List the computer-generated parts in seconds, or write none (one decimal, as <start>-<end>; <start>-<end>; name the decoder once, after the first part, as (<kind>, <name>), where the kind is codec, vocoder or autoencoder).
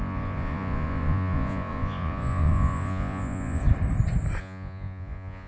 0.0-3.6 (vocoder, Vocos); 4.4-5.5